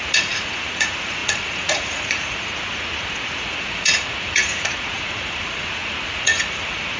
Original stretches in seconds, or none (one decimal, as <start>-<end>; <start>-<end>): none